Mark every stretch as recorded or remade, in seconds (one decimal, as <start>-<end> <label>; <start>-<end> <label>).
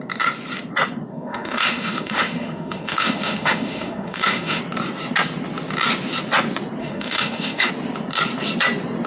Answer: 0.0-1.1 recorded; 1.1-4.6 remade; 4.6-6.8 recorded; 6.8-7.7 remade; 7.7-9.1 recorded